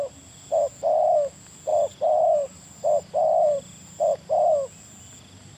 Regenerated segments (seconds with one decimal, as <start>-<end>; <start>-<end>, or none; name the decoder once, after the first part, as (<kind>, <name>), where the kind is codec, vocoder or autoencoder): 1.7-4.5 (vocoder, BigVGAN v2)